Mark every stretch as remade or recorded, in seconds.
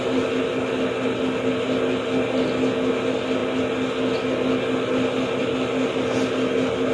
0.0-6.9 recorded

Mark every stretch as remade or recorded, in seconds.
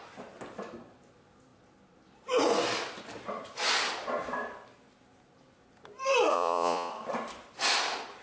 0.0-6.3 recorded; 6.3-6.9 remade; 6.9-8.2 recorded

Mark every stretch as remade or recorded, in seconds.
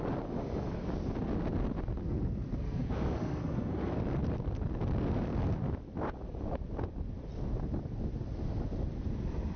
0.0-2.0 recorded; 2.0-3.9 remade; 3.9-9.6 recorded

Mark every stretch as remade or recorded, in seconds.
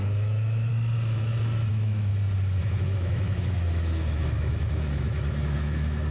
0.0-0.7 remade; 0.7-1.7 recorded; 1.7-2.1 remade; 2.1-2.6 recorded; 2.6-6.1 remade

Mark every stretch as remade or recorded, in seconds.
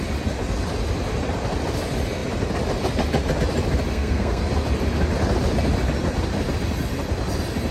0.0-3.9 recorded; 3.9-4.5 remade; 4.5-7.7 recorded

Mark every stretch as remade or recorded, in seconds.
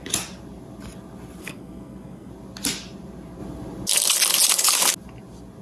0.0-1.4 recorded; 1.4-2.3 remade; 2.3-5.6 recorded